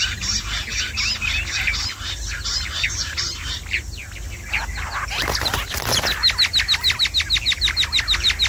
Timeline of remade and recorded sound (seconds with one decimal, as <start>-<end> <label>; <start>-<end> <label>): 0.0-8.5 recorded